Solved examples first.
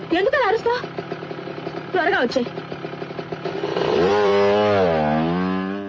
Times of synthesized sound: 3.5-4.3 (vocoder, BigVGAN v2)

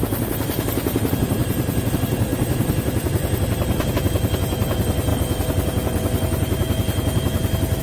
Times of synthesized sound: none

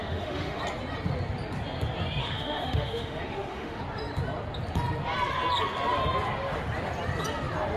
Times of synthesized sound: 0.0-0.6 (autoencoder, DAC-VAE); 2.2-3.8